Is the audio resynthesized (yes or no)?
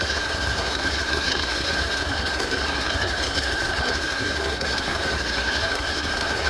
yes